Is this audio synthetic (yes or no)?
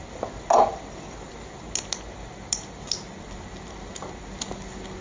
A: no